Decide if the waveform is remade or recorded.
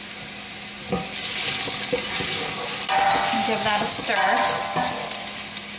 recorded